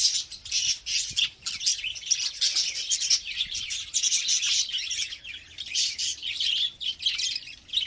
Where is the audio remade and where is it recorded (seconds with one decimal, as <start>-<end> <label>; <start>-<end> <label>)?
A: 0.0-6.1 recorded; 6.1-7.9 remade